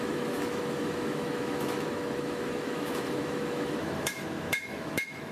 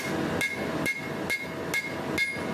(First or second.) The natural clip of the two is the second